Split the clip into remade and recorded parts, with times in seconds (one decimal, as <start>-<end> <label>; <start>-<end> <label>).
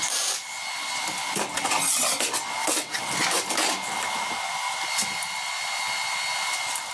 0.0-2.6 recorded; 2.6-3.1 remade; 3.1-6.9 recorded